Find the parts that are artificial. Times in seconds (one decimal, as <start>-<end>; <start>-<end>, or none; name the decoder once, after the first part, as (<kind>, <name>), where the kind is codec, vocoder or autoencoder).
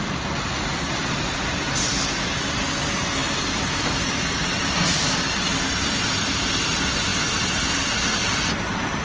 none